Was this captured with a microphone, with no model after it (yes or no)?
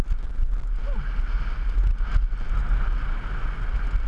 yes